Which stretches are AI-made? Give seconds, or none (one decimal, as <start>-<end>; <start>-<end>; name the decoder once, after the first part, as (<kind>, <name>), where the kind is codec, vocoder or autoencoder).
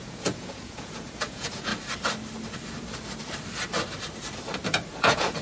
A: 0.0-1.7 (vocoder, Vocos); 4.9-5.4